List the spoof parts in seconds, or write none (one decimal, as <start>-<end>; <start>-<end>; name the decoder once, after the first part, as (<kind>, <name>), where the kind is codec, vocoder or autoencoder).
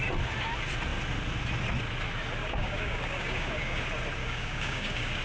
2.4-3.8 (codec, DAC); 4.2-5.2